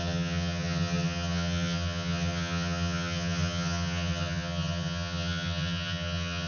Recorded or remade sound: remade